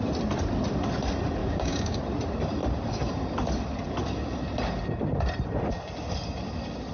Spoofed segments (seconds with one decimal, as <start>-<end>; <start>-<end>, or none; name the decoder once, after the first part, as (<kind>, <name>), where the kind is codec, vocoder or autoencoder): 1.4-2.0 (codec, DAC)